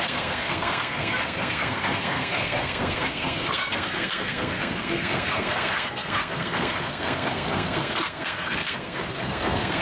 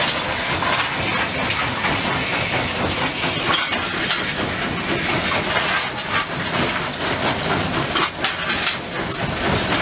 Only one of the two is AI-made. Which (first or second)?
first